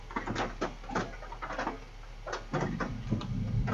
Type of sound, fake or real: real